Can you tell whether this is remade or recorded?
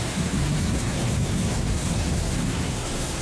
remade